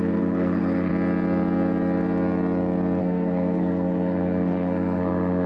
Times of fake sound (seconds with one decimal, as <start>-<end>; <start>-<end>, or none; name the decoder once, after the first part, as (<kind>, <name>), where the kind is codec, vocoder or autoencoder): 0.0-0.9 (codec, SNAC); 3.0-5.5